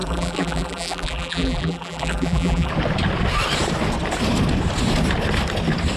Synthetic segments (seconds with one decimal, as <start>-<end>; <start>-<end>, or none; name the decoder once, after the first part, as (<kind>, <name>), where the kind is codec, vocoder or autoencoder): 0.0-2.7 (vocoder, BigVGAN v2)